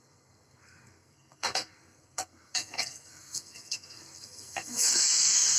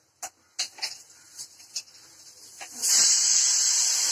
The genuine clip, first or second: second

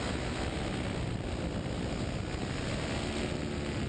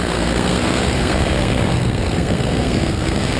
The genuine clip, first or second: first